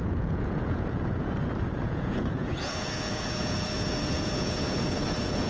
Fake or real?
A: fake